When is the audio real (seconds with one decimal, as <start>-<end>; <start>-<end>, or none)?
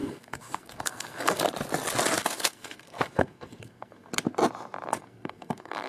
1.4-2.2; 4.1-4.9